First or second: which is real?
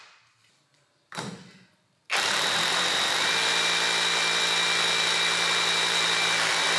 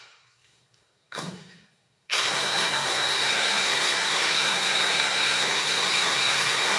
first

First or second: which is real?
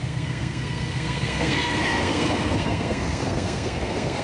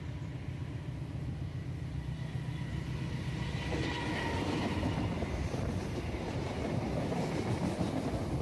second